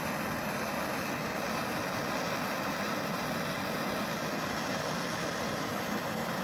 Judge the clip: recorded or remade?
recorded